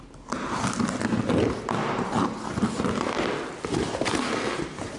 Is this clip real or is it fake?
real